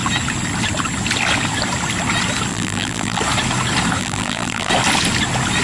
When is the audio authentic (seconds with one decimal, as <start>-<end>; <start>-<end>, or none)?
0.0-2.5; 3.2-4.0; 4.7-5.6

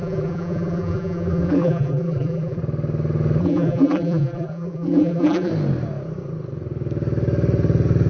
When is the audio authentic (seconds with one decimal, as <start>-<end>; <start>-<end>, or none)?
2.6-3.4; 5.5-8.1

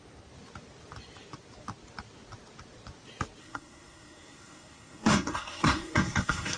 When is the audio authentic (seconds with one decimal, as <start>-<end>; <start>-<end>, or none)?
0.0-3.4